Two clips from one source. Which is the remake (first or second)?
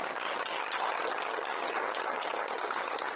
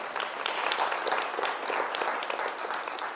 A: first